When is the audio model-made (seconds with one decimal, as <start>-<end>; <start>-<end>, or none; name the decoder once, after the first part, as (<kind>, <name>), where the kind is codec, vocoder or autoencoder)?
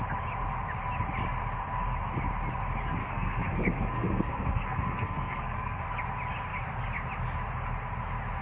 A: 3.0-5.8 (codec, SNAC)